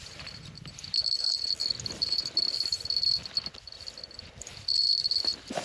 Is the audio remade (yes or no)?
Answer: yes